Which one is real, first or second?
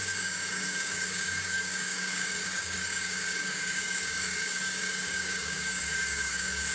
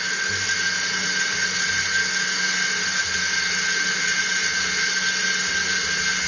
second